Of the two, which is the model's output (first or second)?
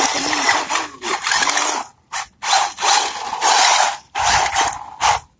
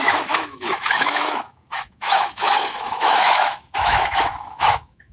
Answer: second